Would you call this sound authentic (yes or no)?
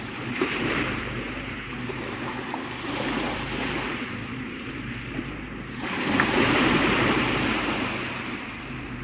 no